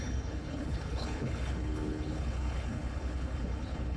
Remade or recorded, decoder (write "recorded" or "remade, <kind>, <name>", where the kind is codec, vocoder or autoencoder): remade, codec, HILCodec